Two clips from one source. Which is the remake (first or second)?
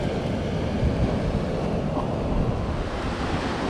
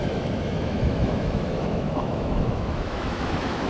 second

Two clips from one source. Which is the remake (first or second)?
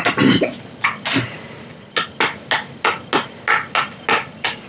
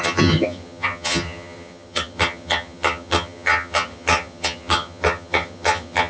second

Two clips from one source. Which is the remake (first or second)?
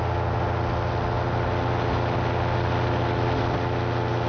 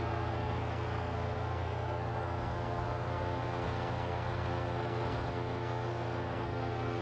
second